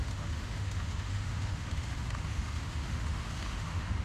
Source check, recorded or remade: remade